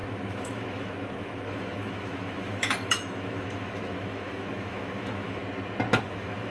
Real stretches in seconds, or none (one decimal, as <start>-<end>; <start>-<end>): 5.4-6.0